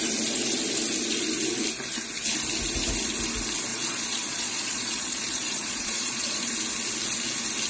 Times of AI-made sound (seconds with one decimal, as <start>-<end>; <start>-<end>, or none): 3.7-6.5